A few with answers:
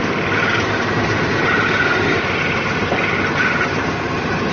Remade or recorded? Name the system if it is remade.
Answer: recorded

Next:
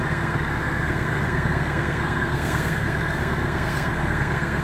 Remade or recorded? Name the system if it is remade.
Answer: remade, codec, SNAC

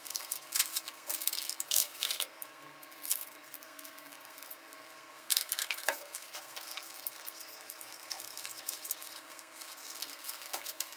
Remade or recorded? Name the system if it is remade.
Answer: remade, codec, SNAC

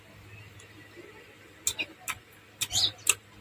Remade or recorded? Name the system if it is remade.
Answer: recorded